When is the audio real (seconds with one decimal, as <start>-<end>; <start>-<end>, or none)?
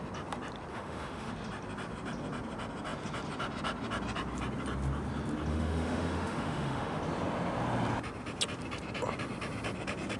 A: 0.0-0.7; 1.3-5.5; 7.0-10.2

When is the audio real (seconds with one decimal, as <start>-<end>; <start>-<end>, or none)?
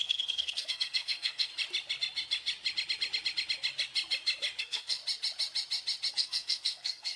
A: 1.5-4.6; 5.0-6.1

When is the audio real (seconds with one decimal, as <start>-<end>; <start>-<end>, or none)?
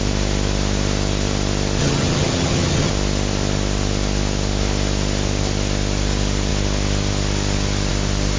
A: 0.0-1.8; 2.9-8.4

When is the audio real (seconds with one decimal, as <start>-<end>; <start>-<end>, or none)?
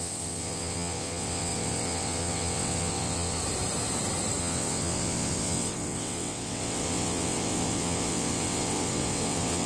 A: 3.4-4.4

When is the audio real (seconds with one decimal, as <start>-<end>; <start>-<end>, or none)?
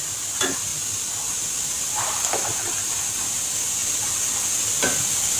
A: 0.7-2.0; 3.8-4.8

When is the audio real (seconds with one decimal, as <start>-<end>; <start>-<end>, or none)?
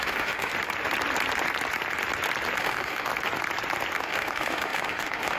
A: 0.5-2.6; 3.1-4.0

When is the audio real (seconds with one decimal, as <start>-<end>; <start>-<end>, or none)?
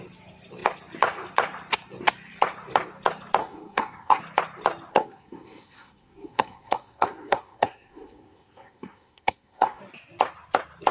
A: 0.0-3.4; 4.2-4.9; 9.8-10.9